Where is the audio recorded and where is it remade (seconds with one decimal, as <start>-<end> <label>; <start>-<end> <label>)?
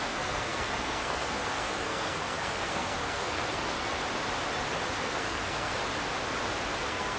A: 0.0-4.0 remade; 4.0-5.0 recorded; 5.0-5.8 remade; 5.8-6.8 recorded; 6.8-7.2 remade